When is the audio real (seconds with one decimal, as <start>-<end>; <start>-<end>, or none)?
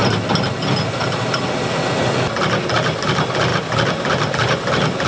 0.0-5.1